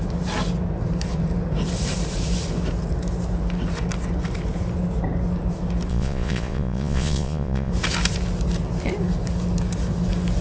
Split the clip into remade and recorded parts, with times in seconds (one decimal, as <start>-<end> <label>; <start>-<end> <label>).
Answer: 0.0-5.9 recorded; 5.9-7.7 remade; 7.7-10.4 recorded